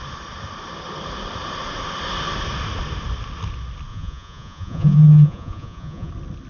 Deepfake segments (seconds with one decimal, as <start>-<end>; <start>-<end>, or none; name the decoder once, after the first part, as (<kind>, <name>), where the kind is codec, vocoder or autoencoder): 3.9-6.1 (vocoder, Vocos)

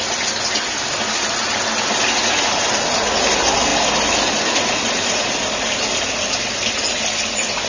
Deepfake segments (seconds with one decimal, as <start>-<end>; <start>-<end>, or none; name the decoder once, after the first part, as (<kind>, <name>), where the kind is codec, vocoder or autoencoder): none

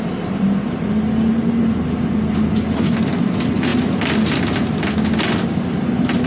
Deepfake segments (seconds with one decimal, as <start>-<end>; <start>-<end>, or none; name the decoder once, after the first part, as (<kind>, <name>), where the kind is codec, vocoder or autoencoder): none

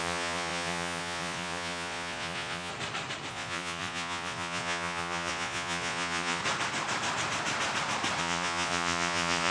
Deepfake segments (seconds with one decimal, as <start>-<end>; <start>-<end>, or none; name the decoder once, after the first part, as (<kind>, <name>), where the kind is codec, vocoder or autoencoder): 0.0-2.7 (vocoder, Vocos); 3.3-6.4; 8.2-9.5